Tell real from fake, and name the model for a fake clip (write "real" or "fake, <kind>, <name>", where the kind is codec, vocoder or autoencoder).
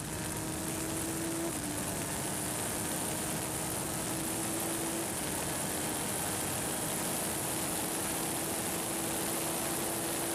real